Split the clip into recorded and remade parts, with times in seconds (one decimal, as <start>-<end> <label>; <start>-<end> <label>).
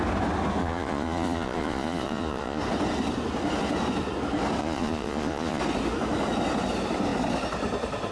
0.0-0.6 recorded; 0.6-2.6 remade; 2.6-4.6 recorded; 4.6-5.6 remade; 5.6-8.1 recorded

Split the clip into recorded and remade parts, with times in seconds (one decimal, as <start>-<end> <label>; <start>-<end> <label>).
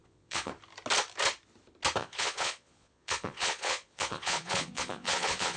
0.0-0.5 remade; 0.5-2.0 recorded; 2.0-5.6 remade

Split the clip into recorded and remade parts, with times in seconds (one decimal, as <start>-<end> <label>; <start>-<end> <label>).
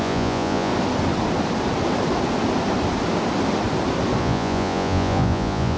0.0-0.7 remade; 0.7-4.2 recorded; 4.2-5.8 remade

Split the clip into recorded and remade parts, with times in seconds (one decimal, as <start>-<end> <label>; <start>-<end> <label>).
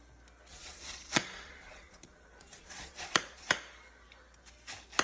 0.0-0.5 recorded; 0.5-3.5 remade; 3.5-5.0 recorded